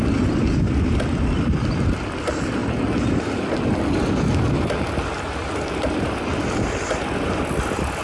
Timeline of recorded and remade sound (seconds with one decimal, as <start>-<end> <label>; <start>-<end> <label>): 0.0-2.6 remade; 2.6-6.0 recorded; 6.0-8.0 remade